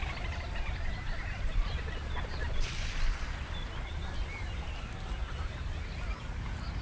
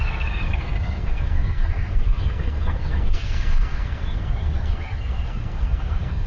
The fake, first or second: second